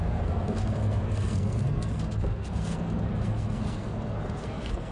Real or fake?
fake